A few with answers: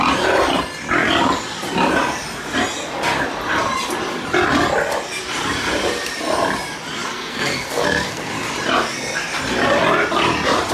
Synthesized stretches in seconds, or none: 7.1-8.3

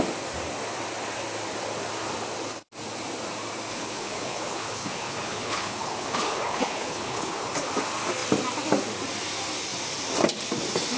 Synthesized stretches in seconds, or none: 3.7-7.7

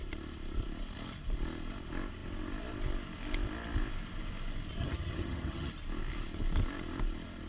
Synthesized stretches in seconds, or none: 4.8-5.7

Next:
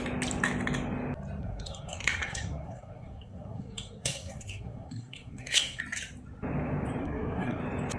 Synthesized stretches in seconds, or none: 1.4-5.8; 7.0-7.6

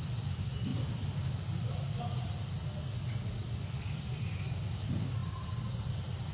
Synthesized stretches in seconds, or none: none

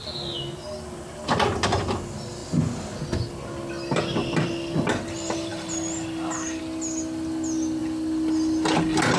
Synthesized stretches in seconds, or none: none

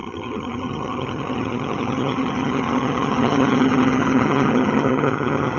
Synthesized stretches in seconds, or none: 0.0-5.6

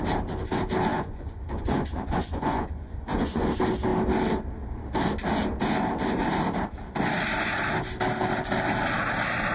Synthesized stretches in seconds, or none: 0.9-3.5